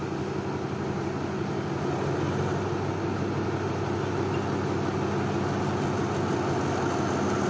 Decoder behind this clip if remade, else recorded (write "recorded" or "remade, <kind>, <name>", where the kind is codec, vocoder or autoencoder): recorded